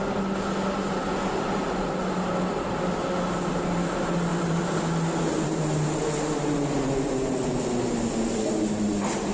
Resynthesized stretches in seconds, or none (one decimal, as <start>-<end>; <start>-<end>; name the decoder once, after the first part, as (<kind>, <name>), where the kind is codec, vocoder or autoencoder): 4.3-7.5 (vocoder, BigVGAN v2)